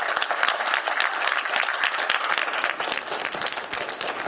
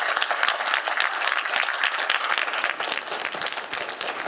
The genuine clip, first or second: second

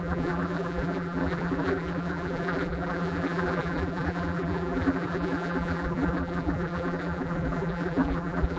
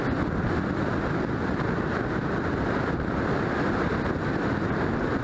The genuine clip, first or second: second